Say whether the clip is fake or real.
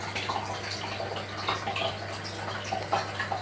real